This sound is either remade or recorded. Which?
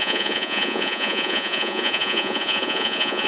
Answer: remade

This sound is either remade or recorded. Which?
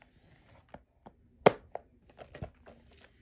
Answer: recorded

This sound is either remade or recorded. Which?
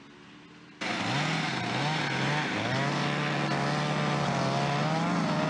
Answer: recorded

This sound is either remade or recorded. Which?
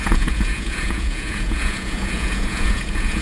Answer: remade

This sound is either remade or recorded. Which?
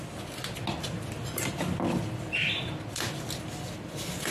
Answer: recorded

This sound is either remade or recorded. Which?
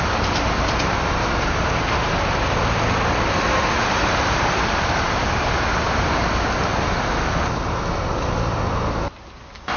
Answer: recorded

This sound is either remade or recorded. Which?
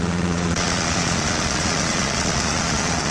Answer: remade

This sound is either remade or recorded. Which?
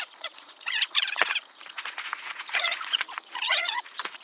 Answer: remade